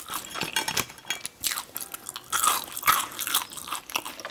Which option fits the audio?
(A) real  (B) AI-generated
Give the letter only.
A